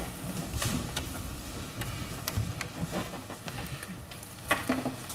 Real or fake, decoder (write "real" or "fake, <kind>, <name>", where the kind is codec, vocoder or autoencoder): real